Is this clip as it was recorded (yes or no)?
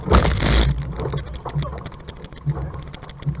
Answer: yes